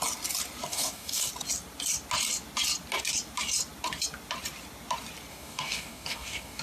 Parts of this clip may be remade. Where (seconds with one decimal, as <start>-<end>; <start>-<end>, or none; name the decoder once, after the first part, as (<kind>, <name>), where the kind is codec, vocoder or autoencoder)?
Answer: 0.7-1.3 (codec, DAC); 5.3-6.6